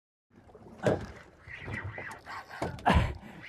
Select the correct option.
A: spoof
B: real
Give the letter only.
A